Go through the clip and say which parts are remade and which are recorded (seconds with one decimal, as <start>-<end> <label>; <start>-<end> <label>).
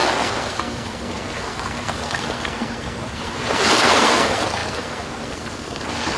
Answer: 0.0-6.2 remade